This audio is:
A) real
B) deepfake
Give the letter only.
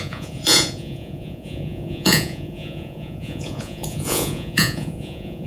B